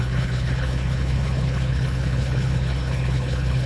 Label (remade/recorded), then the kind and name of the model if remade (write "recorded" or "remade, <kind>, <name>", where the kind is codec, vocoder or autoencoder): remade, codec, HILCodec